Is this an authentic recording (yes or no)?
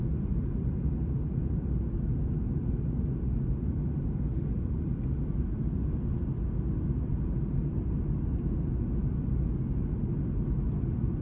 yes